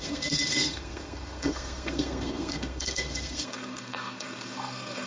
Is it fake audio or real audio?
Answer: fake